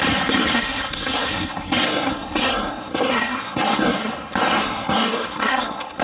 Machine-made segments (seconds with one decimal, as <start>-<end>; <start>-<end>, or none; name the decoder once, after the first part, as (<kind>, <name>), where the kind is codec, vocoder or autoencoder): 0.5-4.1 (codec, SNAC); 4.6-6.0